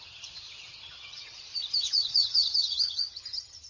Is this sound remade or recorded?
remade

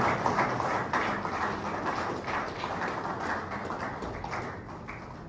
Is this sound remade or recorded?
recorded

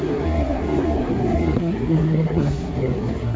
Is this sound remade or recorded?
remade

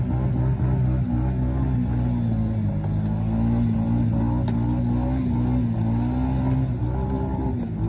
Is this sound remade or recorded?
recorded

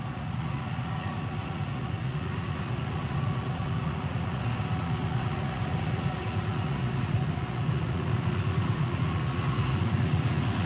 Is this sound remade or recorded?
remade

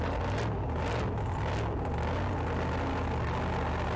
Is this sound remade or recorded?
recorded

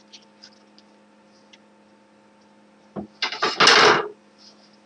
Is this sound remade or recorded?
recorded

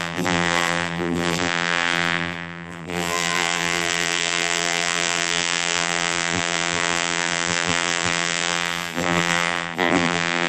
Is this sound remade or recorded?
remade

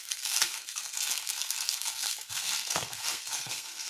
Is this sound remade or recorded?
remade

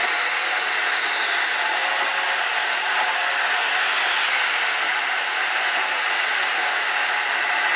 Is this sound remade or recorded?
recorded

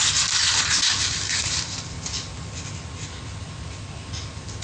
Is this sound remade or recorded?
recorded